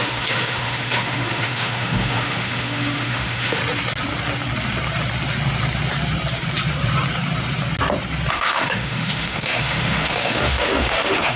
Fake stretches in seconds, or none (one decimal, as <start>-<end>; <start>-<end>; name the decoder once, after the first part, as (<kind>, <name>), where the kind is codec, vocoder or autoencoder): 0.0-3.6 (autoencoder, DAC-VAE); 8.3-11.4